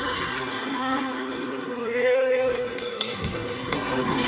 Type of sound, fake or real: fake